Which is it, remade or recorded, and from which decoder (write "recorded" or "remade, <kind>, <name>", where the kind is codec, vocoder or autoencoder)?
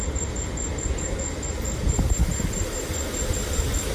recorded